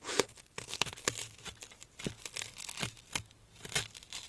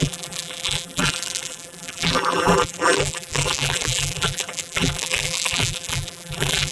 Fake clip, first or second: second